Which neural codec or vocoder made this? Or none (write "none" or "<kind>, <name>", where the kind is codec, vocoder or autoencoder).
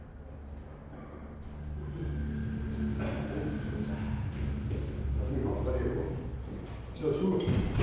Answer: none